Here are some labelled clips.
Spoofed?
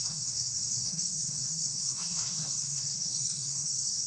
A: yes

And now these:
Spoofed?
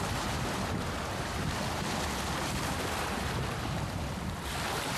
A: no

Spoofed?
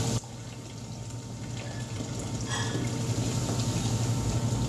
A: no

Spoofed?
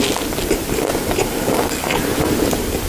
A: no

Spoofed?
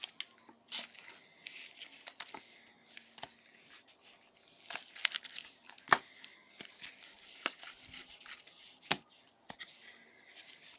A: no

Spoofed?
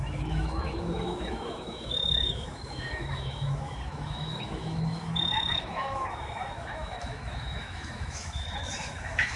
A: yes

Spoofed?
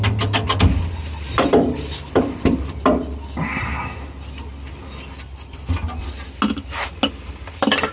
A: no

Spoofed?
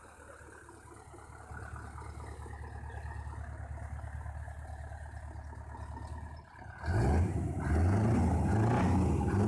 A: no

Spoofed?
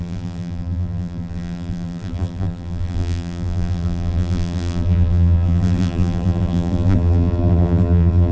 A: yes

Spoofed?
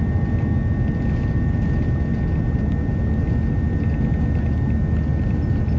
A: no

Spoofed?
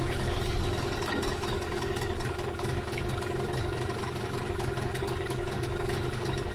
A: yes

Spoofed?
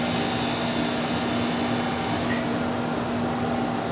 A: no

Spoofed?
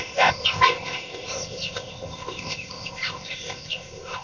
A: yes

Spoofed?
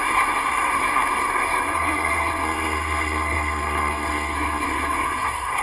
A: yes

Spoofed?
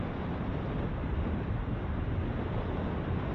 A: no